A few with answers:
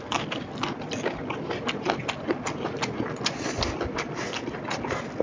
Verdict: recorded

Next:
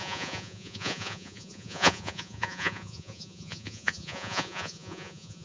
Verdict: remade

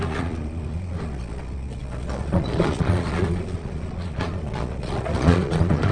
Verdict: remade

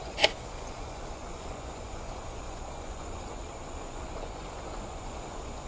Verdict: remade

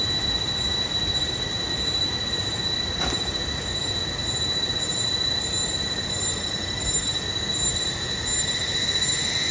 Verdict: recorded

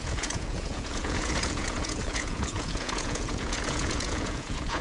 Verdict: remade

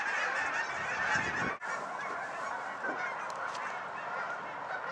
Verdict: recorded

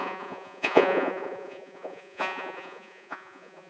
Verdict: remade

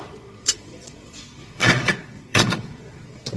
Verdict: remade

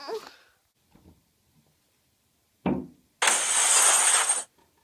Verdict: recorded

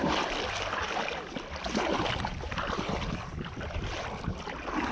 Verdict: recorded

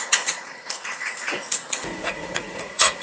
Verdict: remade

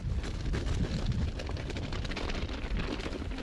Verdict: recorded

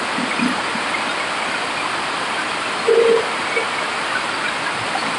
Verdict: recorded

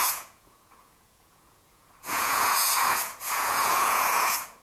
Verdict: remade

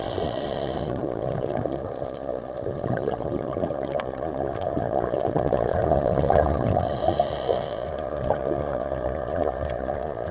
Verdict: remade